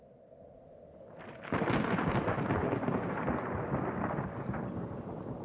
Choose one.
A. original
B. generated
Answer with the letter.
A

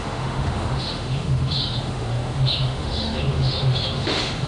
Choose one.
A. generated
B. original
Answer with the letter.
A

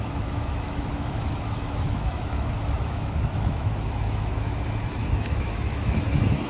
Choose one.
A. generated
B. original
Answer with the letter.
A